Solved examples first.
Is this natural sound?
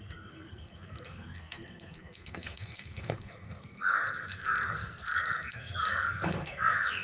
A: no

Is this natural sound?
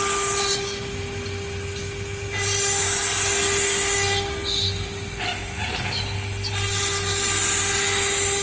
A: yes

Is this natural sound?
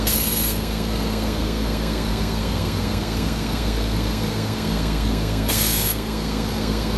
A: no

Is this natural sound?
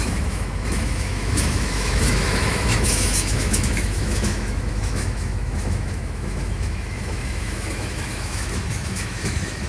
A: no